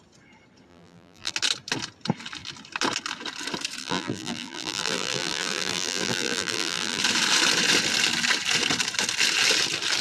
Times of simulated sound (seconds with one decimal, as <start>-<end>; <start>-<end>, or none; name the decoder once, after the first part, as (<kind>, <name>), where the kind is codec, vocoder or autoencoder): 0.7-1.3 (vocoder, BigVGAN v2); 3.8-7.0

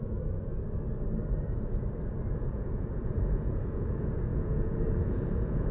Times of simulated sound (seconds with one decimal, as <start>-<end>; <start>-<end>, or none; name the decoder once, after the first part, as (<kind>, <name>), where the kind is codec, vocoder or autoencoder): 0.0-0.5 (vocoder, Vocos); 2.3-5.7

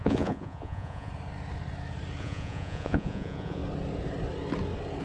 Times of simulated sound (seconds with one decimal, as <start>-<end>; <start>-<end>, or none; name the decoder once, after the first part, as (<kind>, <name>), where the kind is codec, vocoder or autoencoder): 0.0-1.1 (vocoder, Vocos); 2.2-3.6

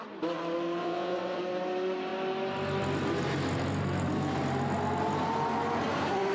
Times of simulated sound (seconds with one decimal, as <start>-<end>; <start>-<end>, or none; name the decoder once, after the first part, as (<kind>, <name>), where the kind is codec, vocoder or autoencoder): 0.8-1.4 (vocoder, WaveNeXt)